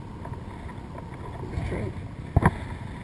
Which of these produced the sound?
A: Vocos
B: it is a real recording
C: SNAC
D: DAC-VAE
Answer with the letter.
B